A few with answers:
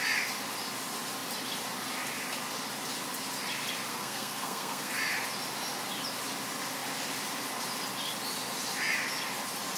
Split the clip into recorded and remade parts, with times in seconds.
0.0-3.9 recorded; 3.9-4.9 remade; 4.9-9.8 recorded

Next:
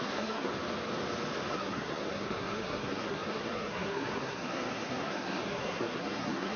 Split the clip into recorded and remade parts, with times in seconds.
0.0-0.5 remade; 0.5-1.5 recorded; 1.5-6.6 remade

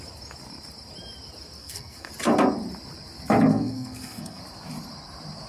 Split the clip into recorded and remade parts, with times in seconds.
0.0-1.6 recorded; 1.6-2.1 remade; 2.1-3.5 recorded; 3.5-4.4 remade; 4.4-5.5 recorded

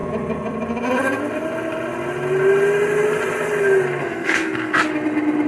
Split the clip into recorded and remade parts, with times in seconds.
0.0-4.0 recorded; 4.0-4.8 remade; 4.8-5.5 recorded

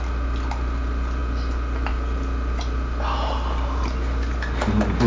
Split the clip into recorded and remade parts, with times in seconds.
0.0-5.1 recorded